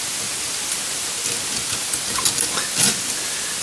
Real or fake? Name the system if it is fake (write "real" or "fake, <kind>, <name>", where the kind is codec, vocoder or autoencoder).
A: real